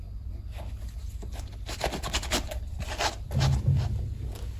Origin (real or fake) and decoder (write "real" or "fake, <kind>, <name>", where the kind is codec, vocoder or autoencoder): real